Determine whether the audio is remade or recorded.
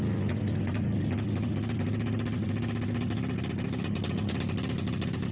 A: recorded